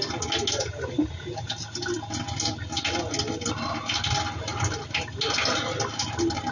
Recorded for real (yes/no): yes